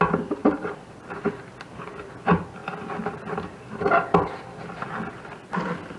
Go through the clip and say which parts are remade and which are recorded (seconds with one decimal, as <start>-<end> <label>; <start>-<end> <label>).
0.0-0.4 recorded; 0.4-1.4 remade; 1.4-6.0 recorded